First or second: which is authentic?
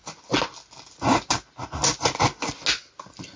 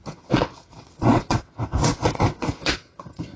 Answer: first